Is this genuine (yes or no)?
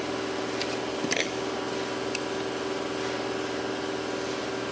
yes